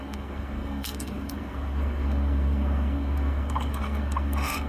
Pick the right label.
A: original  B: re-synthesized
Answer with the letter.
B